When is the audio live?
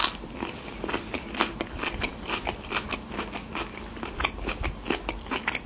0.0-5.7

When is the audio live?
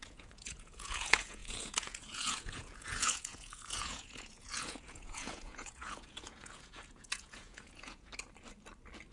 8.1-9.1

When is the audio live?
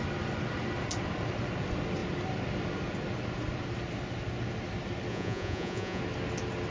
0.0-5.1; 6.0-6.7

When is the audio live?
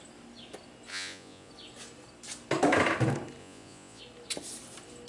0.0-0.9; 1.5-3.4; 4.0-5.1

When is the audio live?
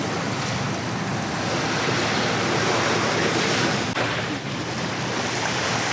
0.0-5.9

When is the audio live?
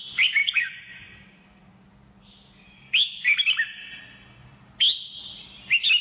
0.0-0.4; 1.1-6.0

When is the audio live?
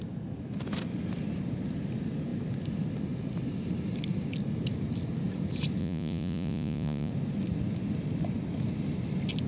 0.0-5.8; 7.1-9.5